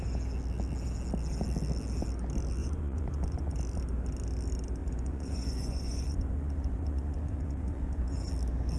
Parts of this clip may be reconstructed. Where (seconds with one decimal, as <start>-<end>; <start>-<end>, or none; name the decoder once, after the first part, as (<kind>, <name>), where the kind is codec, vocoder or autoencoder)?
2.6-3.6 (vocoder, Vocos); 4.8-8.3